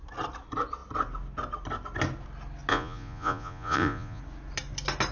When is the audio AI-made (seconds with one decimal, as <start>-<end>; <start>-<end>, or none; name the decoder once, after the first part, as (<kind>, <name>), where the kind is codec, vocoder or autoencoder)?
2.7-4.2 (vocoder, Vocos)